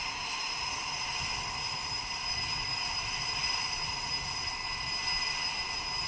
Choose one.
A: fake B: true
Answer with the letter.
B